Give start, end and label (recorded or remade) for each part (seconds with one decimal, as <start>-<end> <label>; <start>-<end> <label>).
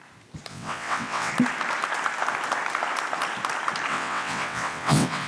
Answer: 0.0-0.5 recorded; 0.5-1.3 remade; 1.3-3.9 recorded; 3.9-5.3 remade